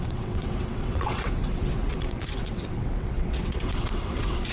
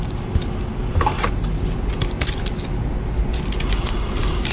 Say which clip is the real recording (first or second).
second